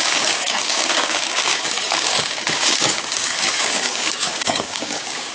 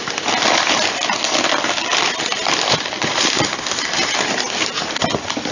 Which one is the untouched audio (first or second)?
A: second